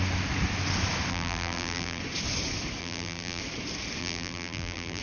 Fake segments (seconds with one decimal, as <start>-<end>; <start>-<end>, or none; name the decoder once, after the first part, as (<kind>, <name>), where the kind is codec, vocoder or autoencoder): 1.1-2.0 (vocoder, BigVGAN v2); 2.8-3.4; 4.0-5.0